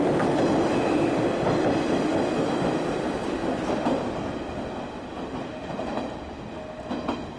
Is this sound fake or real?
real